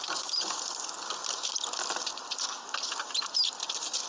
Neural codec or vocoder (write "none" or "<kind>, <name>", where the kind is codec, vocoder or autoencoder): none